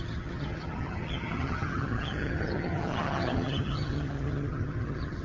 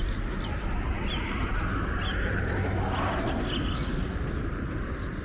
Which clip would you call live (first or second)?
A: second